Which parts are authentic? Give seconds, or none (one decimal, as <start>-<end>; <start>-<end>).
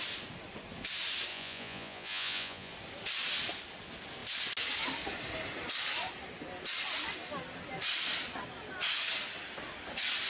0.0-1.3; 2.7-10.3